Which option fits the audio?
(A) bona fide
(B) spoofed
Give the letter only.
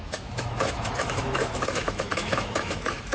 B